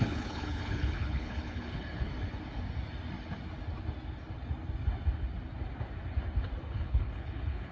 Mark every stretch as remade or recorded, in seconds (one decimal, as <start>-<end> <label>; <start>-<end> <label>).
0.0-2.1 remade; 2.1-6.7 recorded; 6.7-7.7 remade